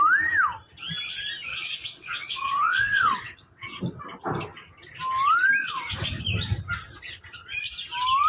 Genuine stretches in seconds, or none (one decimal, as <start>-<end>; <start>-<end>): 0.0-1.5; 3.8-5.6; 6.2-8.3